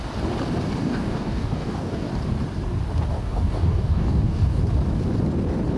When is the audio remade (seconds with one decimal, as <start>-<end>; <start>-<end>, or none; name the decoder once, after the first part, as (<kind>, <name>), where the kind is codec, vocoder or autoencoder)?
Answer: 0.8-2.1 (codec, DAC); 3.1-4.6

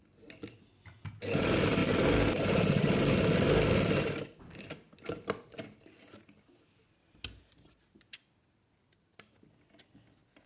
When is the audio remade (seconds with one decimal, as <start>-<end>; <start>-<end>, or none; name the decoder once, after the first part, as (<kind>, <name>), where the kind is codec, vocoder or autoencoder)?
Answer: none